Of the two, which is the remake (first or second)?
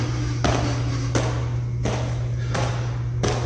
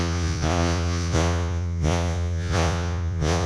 second